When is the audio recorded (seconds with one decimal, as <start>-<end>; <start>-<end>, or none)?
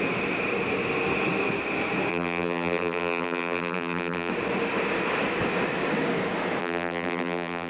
0.0-2.1; 4.3-6.6